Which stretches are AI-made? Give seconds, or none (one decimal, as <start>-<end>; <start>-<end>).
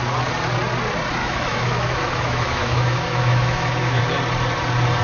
1.2-4.0